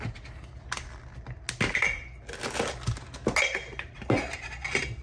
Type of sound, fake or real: real